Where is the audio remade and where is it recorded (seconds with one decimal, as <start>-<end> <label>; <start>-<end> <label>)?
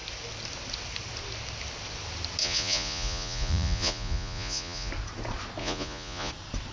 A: 0.0-2.4 recorded; 2.4-4.9 remade; 4.9-5.6 recorded; 5.6-6.3 remade; 6.3-6.7 recorded